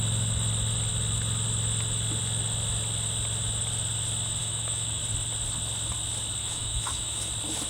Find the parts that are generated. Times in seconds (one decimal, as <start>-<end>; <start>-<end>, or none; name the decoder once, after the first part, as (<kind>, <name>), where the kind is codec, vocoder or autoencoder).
4.4-5.0 (autoencoder, DAC-VAE); 6.4-7.3

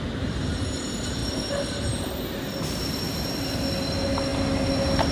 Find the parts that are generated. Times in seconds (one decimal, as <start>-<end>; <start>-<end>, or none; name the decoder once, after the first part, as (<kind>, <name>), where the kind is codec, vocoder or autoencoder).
none

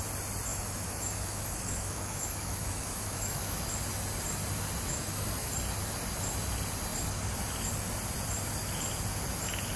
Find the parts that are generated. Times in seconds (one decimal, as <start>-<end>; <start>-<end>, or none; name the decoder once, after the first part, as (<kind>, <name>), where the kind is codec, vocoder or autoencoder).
0.5-3.6 (autoencoder, DAC-VAE); 4.9-5.5

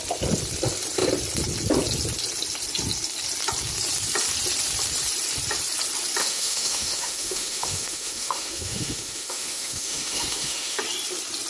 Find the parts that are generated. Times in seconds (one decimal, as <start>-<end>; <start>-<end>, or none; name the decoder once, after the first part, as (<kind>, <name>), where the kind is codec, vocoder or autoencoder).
6.2-10.8 (autoencoder, DAC-VAE)

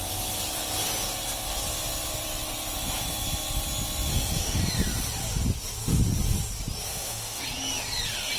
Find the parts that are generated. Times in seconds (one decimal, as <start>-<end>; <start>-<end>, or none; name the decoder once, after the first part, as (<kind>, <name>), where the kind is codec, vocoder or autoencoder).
4.1-4.6 (autoencoder, DAC-VAE); 6.9-7.4

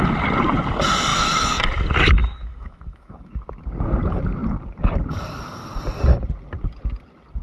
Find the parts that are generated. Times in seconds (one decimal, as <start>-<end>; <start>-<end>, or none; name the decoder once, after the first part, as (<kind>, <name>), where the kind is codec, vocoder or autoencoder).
1.1-1.6 (autoencoder, DAC-VAE); 2.2-3.3

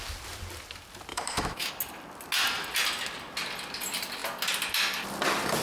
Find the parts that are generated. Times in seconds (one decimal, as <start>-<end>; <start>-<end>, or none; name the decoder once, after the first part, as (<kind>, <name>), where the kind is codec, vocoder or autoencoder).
1.1-1.7 (autoencoder, DAC-VAE)